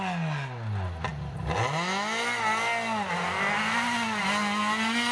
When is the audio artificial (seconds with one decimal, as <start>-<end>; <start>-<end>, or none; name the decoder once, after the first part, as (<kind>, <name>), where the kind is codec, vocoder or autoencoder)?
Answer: none

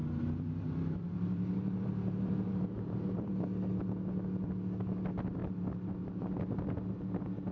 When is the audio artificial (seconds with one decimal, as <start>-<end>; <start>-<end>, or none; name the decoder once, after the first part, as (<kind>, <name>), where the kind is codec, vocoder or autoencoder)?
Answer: 0.0-3.4 (vocoder, BigVGAN v2); 5.4-6.2

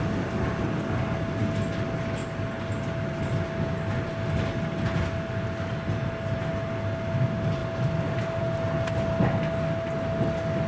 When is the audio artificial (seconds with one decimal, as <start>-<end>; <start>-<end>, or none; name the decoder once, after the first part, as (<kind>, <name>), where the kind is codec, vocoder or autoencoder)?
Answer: none